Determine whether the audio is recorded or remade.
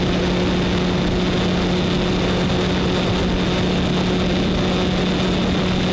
recorded